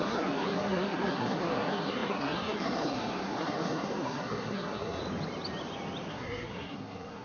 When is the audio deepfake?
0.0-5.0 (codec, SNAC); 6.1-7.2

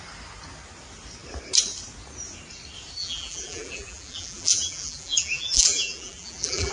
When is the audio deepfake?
3.0-6.7 (vocoder, BigVGAN v2)

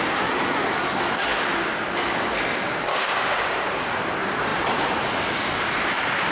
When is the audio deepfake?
2.9-3.5 (codec, DAC)

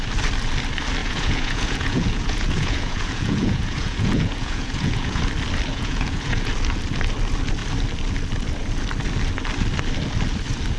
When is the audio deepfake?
1.0-5.2 (vocoder, Vocos); 5.7-6.5

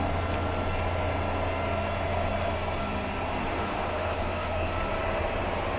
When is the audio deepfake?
3.4-4.7 (autoencoder, DAC-VAE)